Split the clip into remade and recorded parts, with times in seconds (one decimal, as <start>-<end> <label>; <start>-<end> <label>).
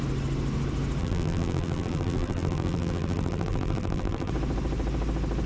0.0-1.0 recorded; 1.0-4.3 remade; 4.3-5.5 recorded